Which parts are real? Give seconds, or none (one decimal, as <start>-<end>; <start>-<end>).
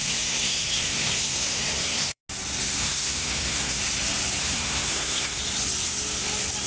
2.2-2.8; 3.8-4.4; 5.4-6.7